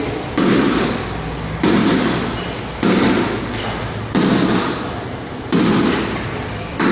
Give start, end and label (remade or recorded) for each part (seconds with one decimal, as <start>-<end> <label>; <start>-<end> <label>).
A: 0.0-6.9 recorded